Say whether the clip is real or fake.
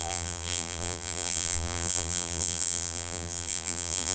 fake